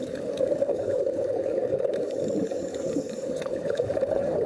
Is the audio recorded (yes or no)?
no